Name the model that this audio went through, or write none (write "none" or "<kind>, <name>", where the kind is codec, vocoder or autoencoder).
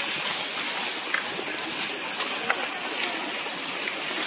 none